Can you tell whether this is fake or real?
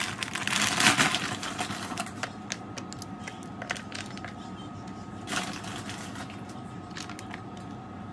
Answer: real